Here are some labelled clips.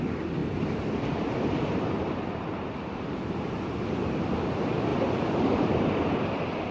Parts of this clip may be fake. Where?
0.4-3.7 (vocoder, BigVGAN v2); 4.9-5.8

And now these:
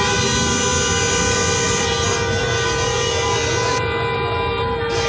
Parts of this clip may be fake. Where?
none

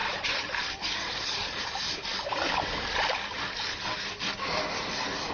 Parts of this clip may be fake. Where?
0.0-1.6 (vocoder, BigVGAN v2)

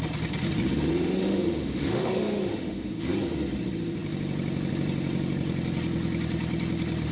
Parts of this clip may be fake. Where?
0.9-3.0 (autoencoder, DAC-VAE)

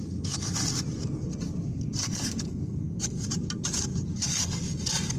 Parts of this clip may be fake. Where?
2.0-3.0 (codec, SNAC)

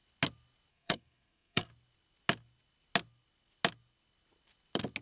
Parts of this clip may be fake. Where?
0.7-1.7 (codec, SNAC)

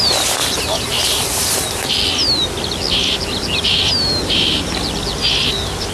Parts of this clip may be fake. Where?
0.4-1.9 (vocoder, BigVGAN v2)